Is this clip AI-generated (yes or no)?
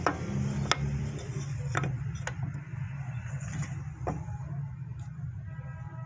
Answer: no